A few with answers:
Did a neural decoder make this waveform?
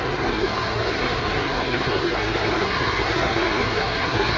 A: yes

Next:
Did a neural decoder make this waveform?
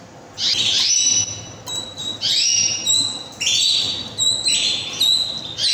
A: no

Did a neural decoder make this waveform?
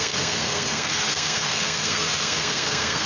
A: yes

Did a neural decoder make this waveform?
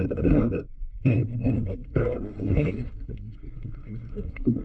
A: yes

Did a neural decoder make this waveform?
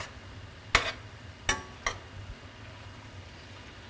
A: no